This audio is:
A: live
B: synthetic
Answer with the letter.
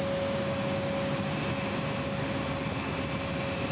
A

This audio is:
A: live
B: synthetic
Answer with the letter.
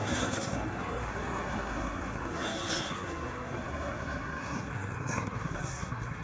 B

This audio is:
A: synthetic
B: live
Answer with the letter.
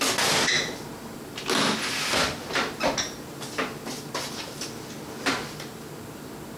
B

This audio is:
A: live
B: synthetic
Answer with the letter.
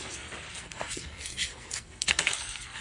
B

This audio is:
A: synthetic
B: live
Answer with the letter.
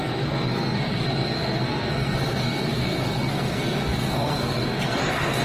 A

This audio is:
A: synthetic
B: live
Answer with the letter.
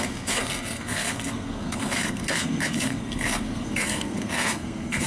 A